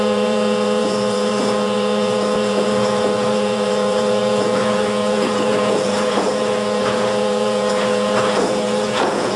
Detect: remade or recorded remade